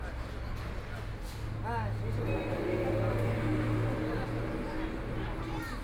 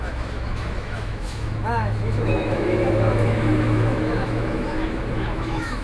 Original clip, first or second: first